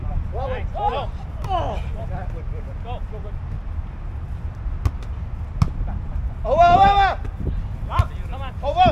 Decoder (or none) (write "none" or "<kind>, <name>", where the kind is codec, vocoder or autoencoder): none